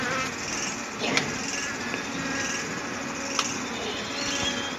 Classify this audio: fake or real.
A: real